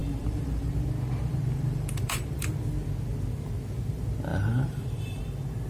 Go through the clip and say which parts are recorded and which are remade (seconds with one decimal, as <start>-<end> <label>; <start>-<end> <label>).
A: 0.0-0.7 remade; 0.7-1.3 recorded; 1.3-2.5 remade; 2.5-4.3 recorded; 4.3-5.2 remade; 5.2-5.7 recorded